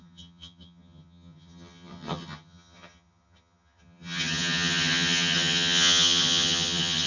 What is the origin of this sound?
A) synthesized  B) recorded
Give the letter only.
A